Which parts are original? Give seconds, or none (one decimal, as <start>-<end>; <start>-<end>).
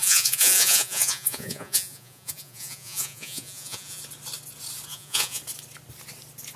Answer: 4.0-4.9; 5.4-6.6